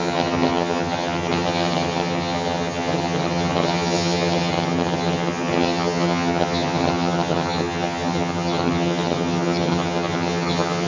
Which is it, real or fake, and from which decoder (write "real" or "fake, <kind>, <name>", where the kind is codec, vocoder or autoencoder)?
fake, vocoder, HiFi-GAN